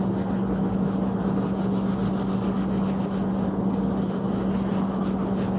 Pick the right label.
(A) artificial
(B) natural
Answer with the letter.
B